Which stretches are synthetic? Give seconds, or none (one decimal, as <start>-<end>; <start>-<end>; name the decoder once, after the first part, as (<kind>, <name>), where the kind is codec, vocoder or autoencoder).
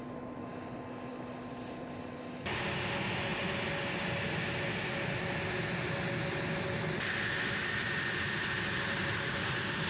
none